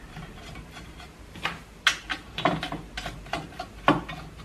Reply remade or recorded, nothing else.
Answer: recorded